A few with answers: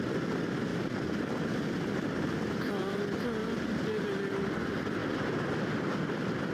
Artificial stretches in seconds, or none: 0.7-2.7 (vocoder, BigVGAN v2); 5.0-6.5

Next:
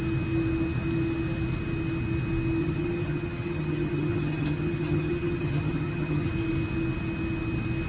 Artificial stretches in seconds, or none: 2.6-6.3 (vocoder, HiFi-GAN)

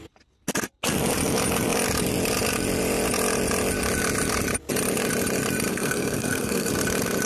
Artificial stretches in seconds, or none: 5.7-6.7 (codec, SNAC)

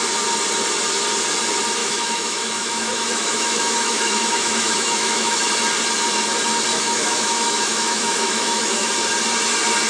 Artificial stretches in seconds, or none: 1.8-5.5 (autoencoder, DAC-VAE); 6.7-8.9

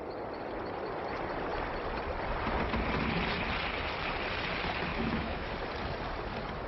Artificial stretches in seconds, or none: 4.9-5.5 (autoencoder, DAC-VAE)